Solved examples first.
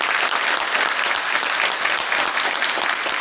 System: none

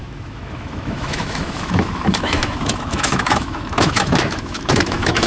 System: autoencoder, DAC-VAE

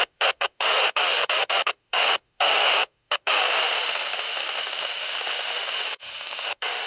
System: autoencoder, DAC-VAE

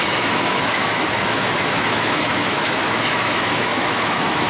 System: autoencoder, DAC-VAE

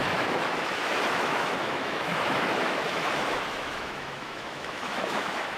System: autoencoder, DAC-VAE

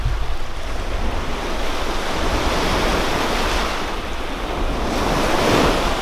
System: none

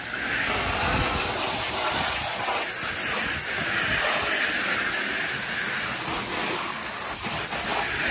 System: none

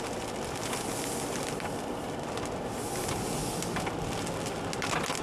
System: none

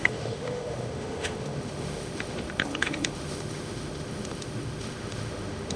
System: autoencoder, DAC-VAE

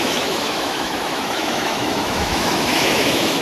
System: autoencoder, DAC-VAE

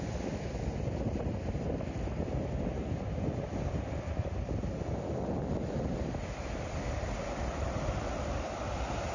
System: none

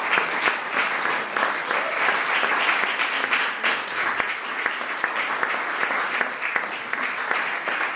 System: none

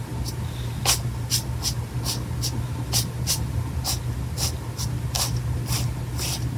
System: none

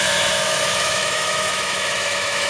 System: autoencoder, DAC-VAE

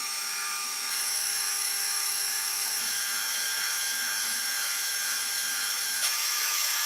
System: autoencoder, DAC-VAE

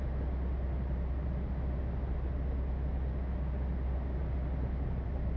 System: none